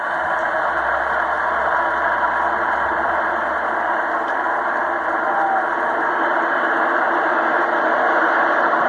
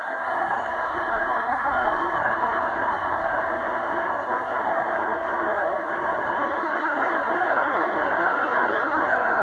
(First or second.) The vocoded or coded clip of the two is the second